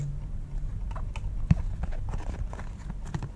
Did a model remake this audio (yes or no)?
no